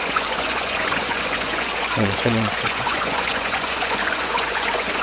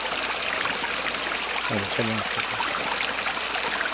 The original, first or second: second